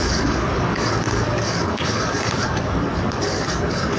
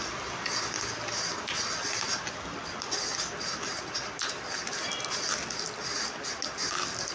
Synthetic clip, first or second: first